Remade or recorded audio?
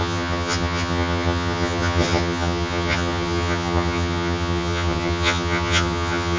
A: remade